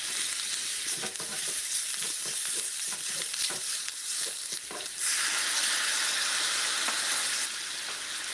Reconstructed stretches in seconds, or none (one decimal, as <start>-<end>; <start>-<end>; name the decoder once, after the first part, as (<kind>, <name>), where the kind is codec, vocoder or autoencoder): 0.7-4.2 (vocoder, BigVGAN v2)